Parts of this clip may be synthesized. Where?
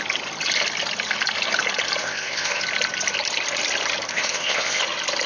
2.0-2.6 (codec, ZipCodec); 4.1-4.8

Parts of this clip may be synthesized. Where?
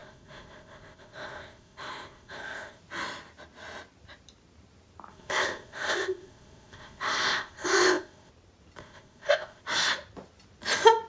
0.0-2.8 (codec, ZipCodec); 5.1-8.3; 8.8-9.6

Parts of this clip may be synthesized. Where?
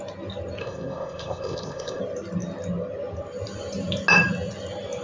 0.6-2.0 (codec, ZipCodec)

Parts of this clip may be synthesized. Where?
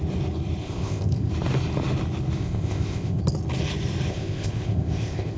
0.6-1.3 (codec, ZipCodec); 2.4-3.2; 4.1-5.4